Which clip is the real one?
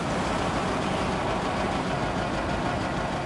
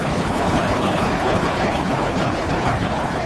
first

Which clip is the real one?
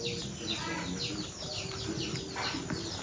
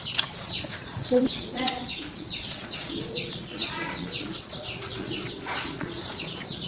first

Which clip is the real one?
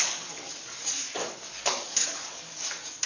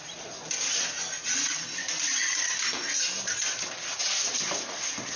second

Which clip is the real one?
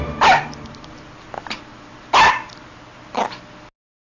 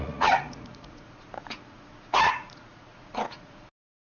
first